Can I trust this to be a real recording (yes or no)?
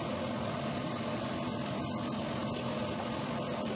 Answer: yes